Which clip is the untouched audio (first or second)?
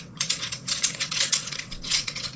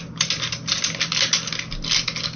second